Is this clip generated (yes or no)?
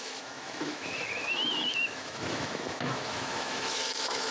yes